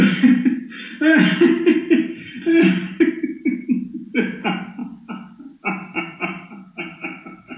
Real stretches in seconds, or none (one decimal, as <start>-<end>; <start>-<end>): 4.8-6.0